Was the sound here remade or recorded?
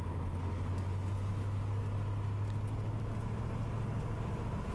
recorded